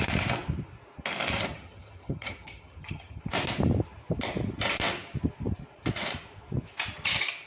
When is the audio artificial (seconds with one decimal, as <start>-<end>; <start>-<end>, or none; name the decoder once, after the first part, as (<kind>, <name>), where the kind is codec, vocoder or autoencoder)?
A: 1.5-3.2 (vocoder, HiFi-GAN)